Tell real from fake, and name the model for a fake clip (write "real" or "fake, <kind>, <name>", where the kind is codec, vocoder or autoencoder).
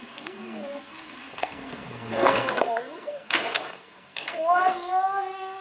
fake, codec, SNAC